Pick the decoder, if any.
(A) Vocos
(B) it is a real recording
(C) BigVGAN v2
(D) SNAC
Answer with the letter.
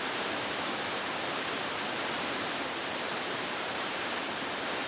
C